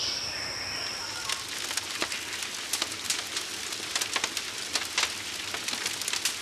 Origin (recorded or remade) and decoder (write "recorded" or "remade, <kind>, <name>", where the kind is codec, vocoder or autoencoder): recorded